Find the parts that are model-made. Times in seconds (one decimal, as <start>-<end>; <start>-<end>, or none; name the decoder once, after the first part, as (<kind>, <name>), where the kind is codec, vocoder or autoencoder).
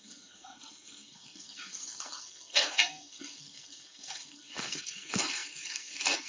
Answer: 0.0-6.3 (codec, SNAC)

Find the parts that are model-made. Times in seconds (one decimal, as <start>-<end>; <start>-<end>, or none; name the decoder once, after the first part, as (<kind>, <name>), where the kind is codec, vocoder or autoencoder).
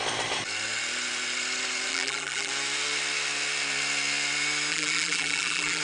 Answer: 1.9-2.5 (vocoder, BigVGAN v2); 4.7-5.8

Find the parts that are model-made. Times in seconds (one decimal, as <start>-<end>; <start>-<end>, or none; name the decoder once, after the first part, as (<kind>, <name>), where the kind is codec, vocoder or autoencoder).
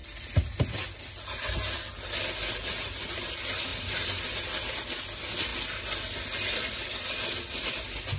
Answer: 3.7-4.2 (vocoder, BigVGAN v2)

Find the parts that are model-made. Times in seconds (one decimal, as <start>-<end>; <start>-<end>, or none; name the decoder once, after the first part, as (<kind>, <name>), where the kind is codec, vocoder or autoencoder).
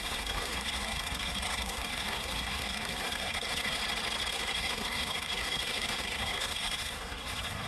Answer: 0.0-3.8 (codec, SNAC); 4.3-7.7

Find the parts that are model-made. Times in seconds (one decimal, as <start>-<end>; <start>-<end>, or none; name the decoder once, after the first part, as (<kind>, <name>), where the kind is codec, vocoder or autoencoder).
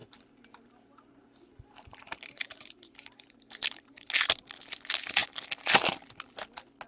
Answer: 0.0-4.1 (vocoder, BigVGAN v2)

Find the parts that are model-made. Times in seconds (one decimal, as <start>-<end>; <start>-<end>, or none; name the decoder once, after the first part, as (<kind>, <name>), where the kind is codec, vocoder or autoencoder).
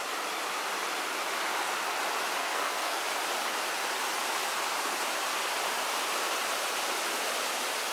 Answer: 2.4-3.0 (codec, SNAC)